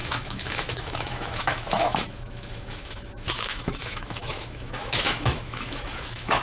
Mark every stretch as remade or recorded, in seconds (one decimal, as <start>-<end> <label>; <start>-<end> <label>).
0.0-6.4 remade